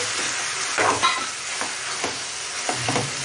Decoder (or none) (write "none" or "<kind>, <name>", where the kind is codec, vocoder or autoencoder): none